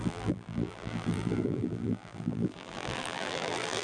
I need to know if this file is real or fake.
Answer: fake